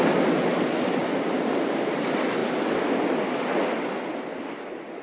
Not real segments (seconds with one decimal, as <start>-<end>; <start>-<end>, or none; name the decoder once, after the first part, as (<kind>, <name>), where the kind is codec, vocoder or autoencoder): none